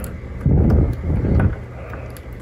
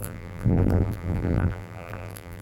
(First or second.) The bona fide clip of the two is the first